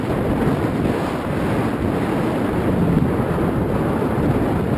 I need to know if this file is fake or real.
real